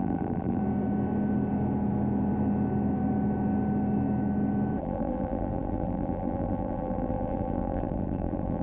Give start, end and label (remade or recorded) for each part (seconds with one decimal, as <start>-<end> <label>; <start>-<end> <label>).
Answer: 0.0-0.6 remade; 0.6-4.8 recorded; 4.8-8.6 remade